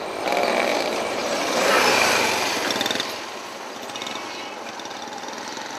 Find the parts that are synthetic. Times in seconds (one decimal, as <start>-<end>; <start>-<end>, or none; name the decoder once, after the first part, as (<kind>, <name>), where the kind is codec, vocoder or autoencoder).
0.7-2.7 (vocoder, BigVGAN v2)